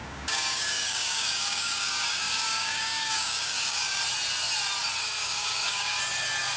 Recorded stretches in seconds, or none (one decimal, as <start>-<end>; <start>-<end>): 4.0-5.2; 6.0-6.6